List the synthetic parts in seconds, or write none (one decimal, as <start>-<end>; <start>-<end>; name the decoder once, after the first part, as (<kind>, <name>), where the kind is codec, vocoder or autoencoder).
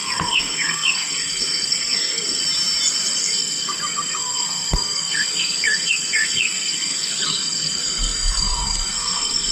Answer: 0.0-2.4 (codec, SNAC); 3.2-9.5